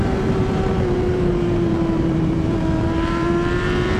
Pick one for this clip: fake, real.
fake